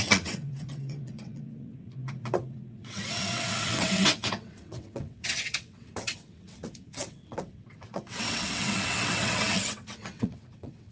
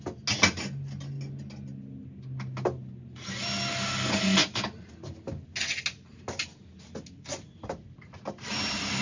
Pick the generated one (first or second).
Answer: first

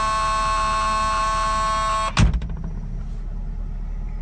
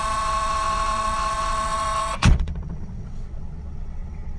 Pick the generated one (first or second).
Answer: second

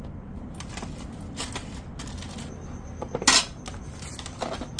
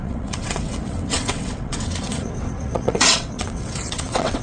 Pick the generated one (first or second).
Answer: second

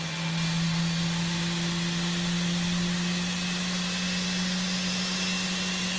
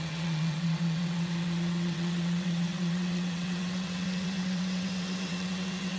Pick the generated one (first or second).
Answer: second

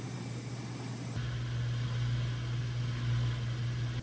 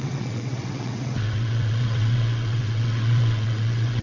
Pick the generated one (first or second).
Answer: second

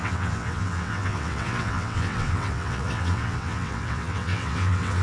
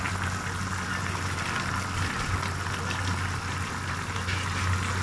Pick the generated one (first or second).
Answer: first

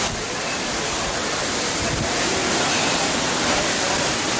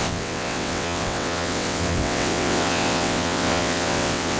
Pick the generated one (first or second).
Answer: second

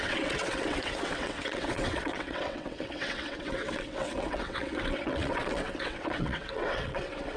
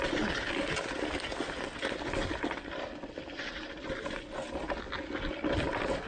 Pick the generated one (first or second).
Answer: first